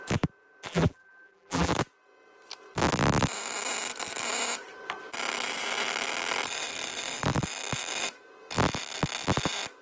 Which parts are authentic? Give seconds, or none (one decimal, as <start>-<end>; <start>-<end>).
0.0-0.7; 1.7-9.8

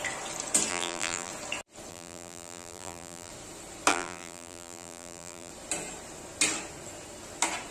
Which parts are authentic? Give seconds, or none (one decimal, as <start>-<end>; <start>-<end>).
0.0-0.7; 1.3-1.9; 3.3-3.9; 5.5-7.7

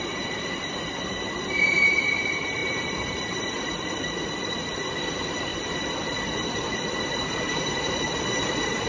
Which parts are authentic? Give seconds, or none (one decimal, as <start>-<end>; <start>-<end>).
5.5-6.5

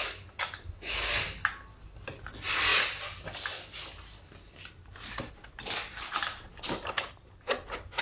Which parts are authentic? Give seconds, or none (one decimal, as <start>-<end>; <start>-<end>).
0.0-5.9

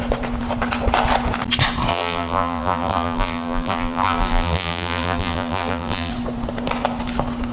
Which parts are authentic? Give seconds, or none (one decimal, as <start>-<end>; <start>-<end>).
0.0-1.9; 6.1-7.5

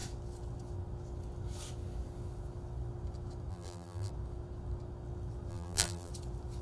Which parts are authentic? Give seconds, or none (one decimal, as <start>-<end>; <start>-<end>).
0.0-3.5; 4.1-5.5; 6.1-6.6